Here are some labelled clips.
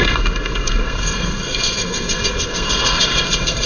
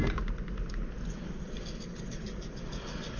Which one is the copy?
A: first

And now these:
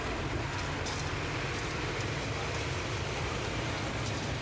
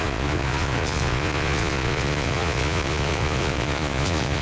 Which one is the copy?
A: second